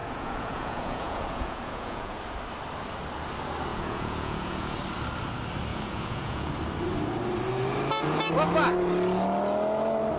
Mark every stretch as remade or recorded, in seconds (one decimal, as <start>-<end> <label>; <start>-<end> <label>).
0.0-2.2 remade; 2.2-3.7 recorded; 3.7-4.8 remade; 4.8-5.7 recorded; 5.7-6.5 remade; 6.5-10.2 recorded